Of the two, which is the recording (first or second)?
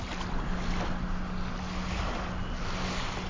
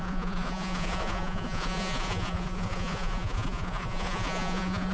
first